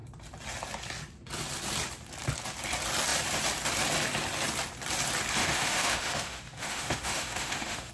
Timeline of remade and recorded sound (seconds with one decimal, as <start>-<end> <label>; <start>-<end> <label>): 0.0-5.4 recorded; 5.4-7.9 remade